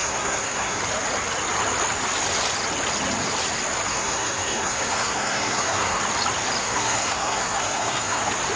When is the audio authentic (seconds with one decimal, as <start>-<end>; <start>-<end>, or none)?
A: 0.8-3.9; 6.0-6.6; 8.2-8.6

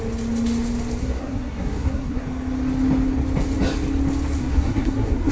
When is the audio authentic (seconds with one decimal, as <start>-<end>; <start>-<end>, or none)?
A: 0.0-1.0; 2.2-4.4

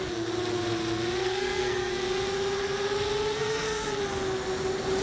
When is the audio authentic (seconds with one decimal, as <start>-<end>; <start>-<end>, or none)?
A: 0.0-1.2; 1.9-3.3; 4.0-5.0